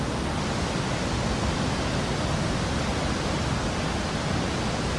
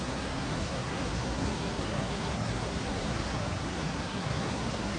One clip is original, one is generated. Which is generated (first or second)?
second